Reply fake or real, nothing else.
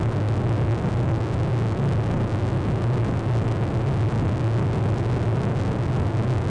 real